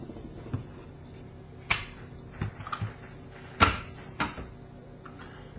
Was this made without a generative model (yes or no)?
yes